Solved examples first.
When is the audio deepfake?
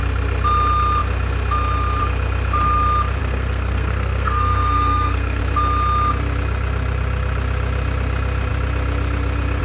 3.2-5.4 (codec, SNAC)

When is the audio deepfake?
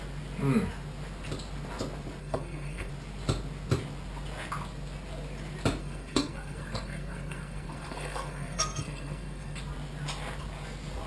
2.2-2.9 (codec, SNAC); 5.8-9.6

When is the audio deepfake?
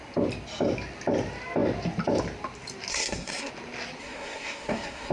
2.9-3.5 (codec, SNAC); 4.0-5.1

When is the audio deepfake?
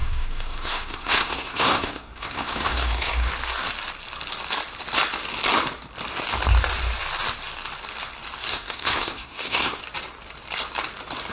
0.0-3.3 (codec, SNAC); 8.5-9.8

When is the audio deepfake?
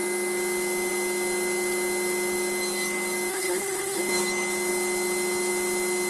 3.3-4.0 (codec, SNAC)